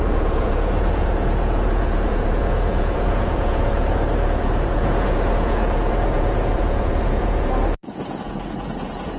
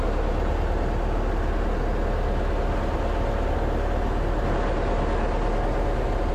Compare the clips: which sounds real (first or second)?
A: second